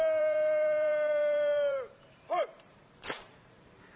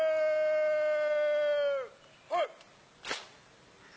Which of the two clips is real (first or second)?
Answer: second